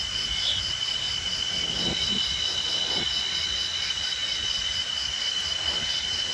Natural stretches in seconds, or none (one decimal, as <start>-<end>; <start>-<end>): 0.0-6.3